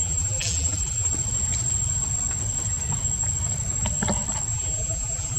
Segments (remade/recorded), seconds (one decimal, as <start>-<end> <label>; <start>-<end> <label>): 0.0-1.1 remade; 1.1-4.5 recorded; 4.5-5.4 remade